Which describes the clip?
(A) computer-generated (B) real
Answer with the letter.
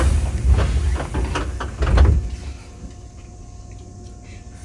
B